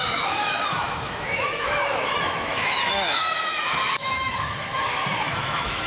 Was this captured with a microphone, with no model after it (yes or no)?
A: no